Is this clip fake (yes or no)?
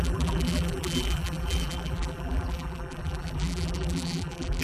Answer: yes